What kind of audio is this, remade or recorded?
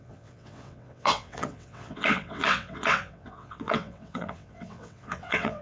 remade